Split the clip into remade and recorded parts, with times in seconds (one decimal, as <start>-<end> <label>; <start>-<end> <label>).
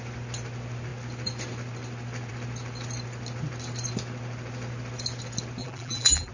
0.0-5.6 recorded; 5.6-6.3 remade